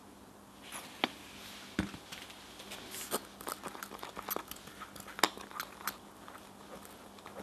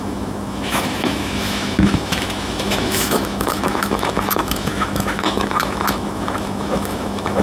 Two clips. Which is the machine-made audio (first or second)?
second